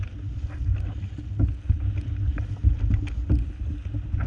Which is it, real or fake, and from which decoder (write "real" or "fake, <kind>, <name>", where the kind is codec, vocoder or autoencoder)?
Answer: real